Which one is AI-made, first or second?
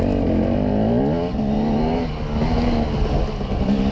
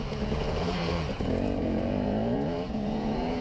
second